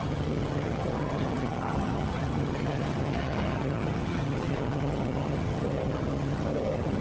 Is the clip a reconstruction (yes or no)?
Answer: yes